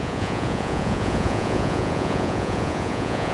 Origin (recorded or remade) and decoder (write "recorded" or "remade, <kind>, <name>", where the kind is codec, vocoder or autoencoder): remade, vocoder, Vocos